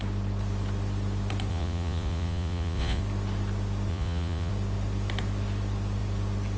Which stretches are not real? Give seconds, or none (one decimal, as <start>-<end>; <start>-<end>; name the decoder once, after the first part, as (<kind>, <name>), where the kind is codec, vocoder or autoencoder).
1.5-3.0 (vocoder, Vocos); 3.9-4.5